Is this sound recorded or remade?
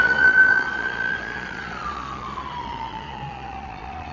remade